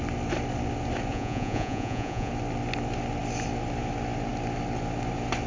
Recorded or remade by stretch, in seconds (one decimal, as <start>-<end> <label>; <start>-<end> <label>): 0.0-1.1 recorded; 1.1-2.3 remade; 2.3-5.5 recorded